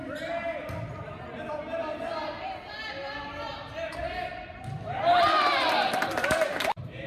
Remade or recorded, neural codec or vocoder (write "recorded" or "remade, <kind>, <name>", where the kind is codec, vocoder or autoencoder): remade, vocoder, BigVGAN v2